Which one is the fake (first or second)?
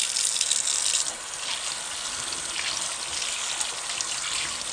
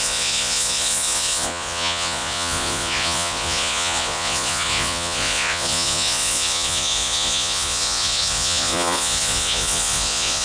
second